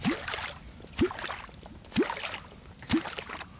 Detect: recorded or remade recorded